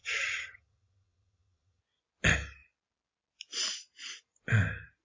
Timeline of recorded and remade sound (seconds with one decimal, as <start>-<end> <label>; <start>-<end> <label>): 0.0-1.8 remade; 1.8-5.0 recorded